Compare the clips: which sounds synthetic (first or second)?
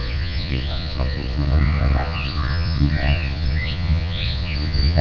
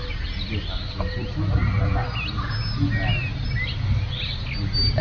first